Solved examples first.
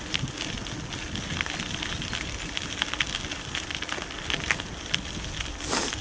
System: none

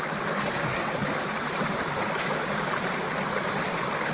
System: none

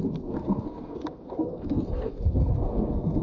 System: codec, SNAC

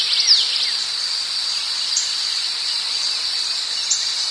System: none